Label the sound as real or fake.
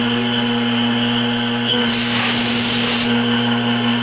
real